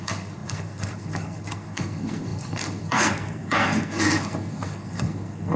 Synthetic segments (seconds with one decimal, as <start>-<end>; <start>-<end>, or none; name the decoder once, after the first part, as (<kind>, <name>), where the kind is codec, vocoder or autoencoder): 0.0-5.6 (codec, SNAC)